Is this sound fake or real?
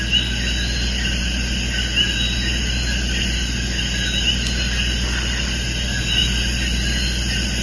real